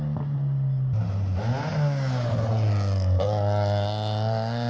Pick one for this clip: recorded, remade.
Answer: recorded